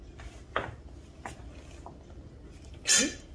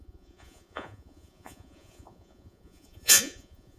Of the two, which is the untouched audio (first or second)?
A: first